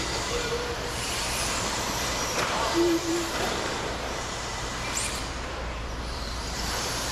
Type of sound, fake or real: fake